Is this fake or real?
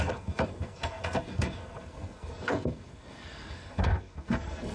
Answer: fake